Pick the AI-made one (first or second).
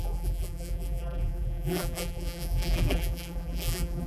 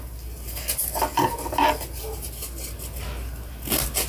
first